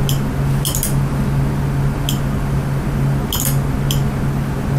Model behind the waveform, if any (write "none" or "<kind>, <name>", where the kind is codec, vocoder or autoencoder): none